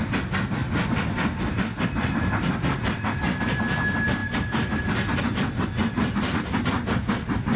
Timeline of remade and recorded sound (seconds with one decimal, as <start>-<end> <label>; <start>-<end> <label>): 0.0-7.6 recorded